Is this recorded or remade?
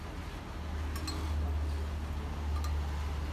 recorded